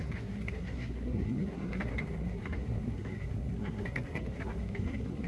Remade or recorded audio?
remade